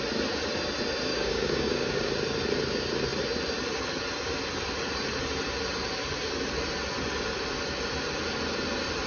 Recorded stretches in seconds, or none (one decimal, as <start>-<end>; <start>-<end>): 0.0-1.1; 2.1-9.1